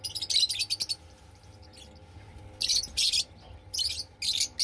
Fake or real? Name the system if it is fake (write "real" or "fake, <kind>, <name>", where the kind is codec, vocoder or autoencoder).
real